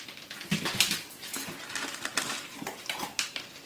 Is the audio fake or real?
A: real